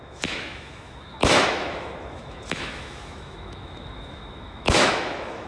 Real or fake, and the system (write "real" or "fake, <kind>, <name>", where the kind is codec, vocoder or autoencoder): fake, autoencoder, DAC-VAE